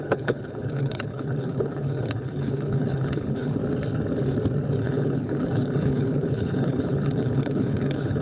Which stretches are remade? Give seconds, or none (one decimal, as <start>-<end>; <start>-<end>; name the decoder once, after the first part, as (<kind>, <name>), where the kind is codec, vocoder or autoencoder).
0.0-3.6 (codec, HILCodec); 4.8-8.2